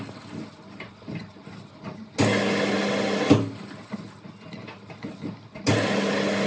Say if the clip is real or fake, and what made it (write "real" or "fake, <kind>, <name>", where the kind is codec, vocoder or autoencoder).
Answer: real